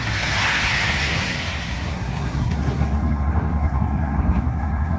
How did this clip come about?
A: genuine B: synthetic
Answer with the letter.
B